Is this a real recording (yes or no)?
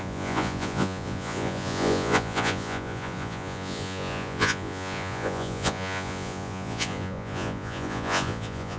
no